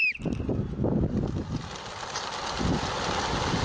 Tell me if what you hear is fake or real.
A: real